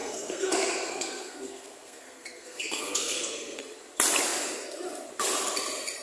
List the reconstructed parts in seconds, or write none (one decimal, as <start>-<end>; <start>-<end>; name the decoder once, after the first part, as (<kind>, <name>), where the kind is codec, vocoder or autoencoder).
0.0-3.6 (codec, SNAC)